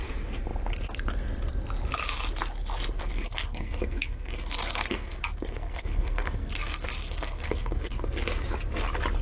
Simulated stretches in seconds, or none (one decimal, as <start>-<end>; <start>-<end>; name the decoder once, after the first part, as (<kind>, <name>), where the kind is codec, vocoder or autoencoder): 3.0-8.0 (codec, SNAC)